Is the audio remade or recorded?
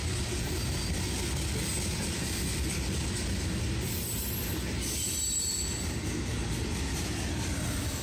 recorded